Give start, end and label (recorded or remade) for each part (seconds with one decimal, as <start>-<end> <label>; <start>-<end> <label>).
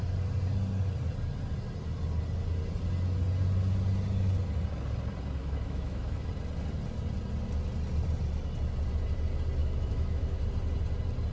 0.0-5.4 recorded; 5.4-6.3 remade; 6.3-9.6 recorded; 9.6-10.4 remade; 10.4-11.3 recorded